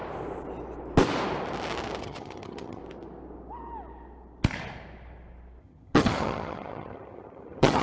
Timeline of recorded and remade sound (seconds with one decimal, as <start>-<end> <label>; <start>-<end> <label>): 0.0-2.0 recorded; 2.0-2.8 remade; 2.8-5.6 recorded; 5.6-7.8 remade